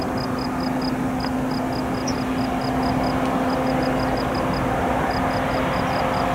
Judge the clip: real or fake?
real